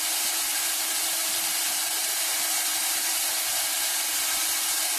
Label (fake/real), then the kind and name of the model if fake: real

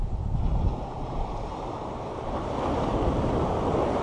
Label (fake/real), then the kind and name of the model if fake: real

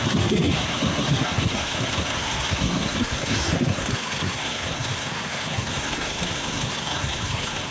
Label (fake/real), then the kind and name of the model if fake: fake, codec, SNAC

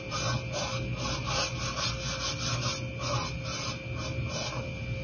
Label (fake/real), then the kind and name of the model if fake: real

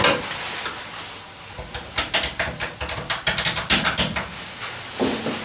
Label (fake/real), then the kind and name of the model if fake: real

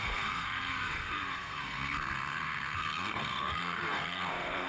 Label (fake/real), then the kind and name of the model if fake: fake, codec, SNAC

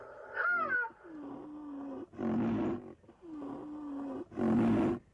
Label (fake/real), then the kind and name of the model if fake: real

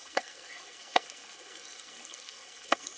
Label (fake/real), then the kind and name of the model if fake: fake, codec, SNAC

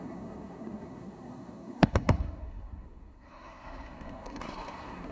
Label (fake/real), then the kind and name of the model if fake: fake, codec, SNAC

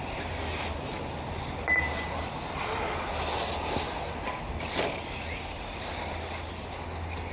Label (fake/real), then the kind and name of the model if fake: real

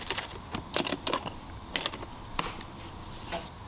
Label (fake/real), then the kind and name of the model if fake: real